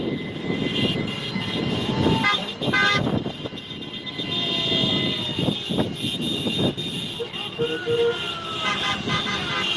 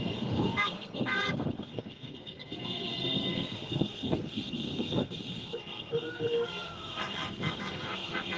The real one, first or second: first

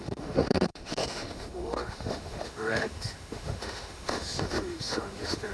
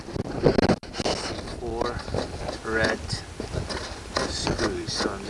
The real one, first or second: second